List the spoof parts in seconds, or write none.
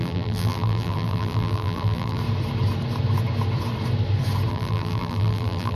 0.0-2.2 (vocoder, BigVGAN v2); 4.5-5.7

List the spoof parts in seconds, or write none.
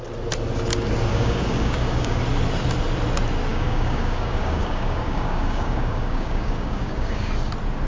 1.1-2.2 (codec, DAC); 3.5-7.3